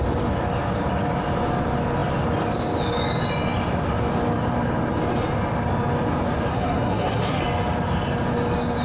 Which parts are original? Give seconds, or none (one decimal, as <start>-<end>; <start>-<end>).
0.0-6.5; 7.4-8.8

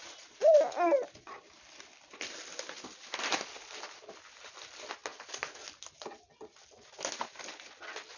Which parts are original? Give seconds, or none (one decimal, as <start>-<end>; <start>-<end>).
0.0-8.2

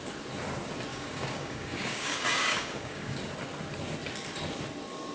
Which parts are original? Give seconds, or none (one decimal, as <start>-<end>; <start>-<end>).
0.0-0.9; 3.2-5.1

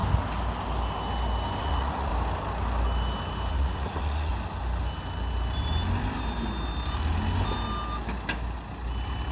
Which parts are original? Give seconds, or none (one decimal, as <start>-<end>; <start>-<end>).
0.0-1.6; 2.1-3.5; 4.3-9.3

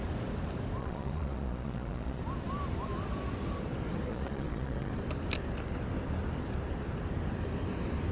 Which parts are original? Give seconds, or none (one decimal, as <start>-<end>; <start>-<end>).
0.0-0.8; 2.2-4.1; 4.9-8.1

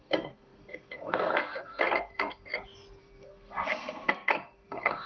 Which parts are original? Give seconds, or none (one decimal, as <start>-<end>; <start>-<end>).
2.5-3.0

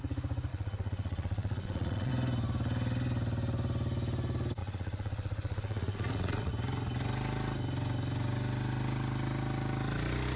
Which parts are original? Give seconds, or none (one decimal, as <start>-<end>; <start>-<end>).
0.0-0.5; 2.1-4.6; 6.5-10.4